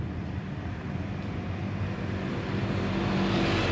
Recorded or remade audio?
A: recorded